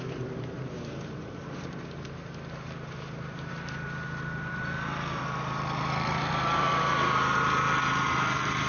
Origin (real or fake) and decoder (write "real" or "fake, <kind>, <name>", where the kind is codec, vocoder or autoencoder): fake, vocoder, BigVGAN v2